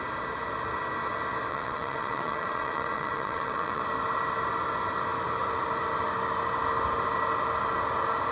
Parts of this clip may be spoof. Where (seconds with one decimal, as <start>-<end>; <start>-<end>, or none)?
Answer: 1.5-3.8